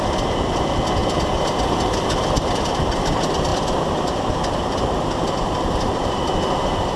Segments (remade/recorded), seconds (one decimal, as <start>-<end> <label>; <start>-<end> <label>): 0.0-7.0 recorded